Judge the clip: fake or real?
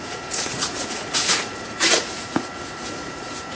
fake